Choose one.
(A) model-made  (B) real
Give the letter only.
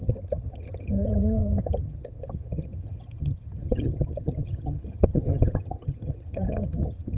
A